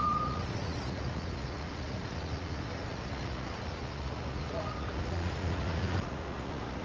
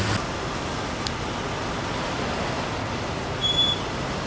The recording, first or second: second